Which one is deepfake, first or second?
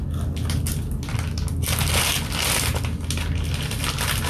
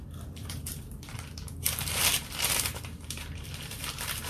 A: second